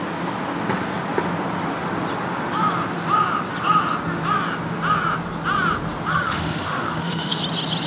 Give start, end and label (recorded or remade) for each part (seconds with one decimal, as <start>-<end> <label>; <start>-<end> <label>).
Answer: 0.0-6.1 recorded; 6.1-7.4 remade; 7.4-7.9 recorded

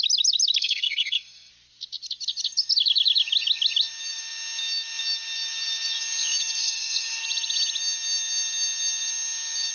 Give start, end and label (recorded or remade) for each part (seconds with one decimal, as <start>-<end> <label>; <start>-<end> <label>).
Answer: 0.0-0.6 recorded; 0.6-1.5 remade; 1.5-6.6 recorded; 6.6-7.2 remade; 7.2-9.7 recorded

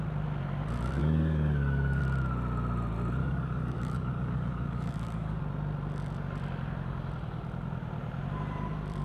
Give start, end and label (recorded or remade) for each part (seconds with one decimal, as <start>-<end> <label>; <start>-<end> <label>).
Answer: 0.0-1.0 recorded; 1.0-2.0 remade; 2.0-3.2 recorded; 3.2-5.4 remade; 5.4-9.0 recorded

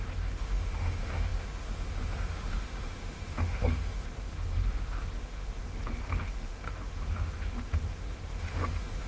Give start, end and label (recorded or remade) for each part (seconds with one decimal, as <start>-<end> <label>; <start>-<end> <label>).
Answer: 0.0-9.1 remade